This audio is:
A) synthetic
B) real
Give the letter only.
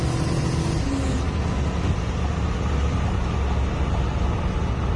B